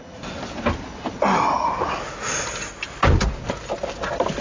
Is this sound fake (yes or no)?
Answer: no